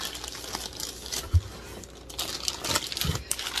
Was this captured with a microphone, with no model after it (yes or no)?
yes